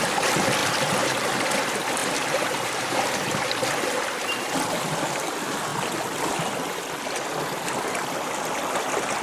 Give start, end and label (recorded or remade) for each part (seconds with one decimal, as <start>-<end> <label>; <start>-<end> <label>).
0.0-0.6 recorded; 0.6-1.1 remade; 1.1-2.0 recorded; 2.0-3.3 remade; 3.3-9.2 recorded